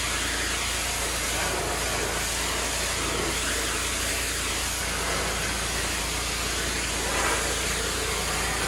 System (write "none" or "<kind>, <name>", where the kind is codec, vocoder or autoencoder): none